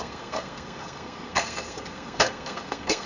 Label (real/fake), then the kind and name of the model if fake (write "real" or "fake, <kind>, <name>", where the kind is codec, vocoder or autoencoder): fake, codec, SNAC